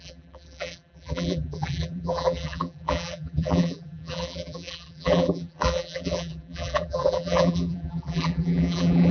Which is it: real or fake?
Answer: fake